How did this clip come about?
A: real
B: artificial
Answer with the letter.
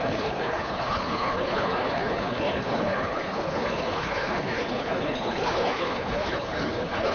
B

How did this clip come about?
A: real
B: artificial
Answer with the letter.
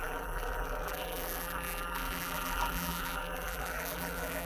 B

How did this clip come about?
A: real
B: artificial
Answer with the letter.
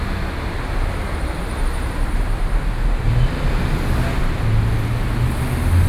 A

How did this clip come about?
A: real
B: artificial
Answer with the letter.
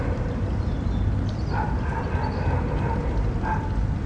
A